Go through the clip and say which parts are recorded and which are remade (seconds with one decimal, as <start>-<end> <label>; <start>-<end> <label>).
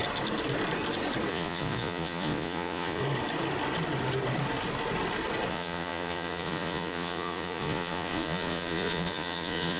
0.0-1.3 recorded; 1.3-3.0 remade; 3.0-5.5 recorded; 5.5-9.8 remade